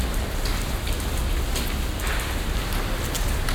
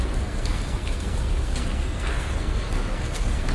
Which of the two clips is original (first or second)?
first